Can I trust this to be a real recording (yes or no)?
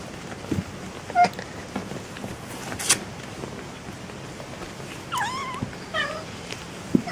yes